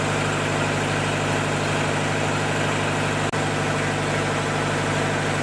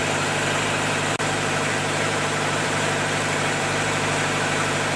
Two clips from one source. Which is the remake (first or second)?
second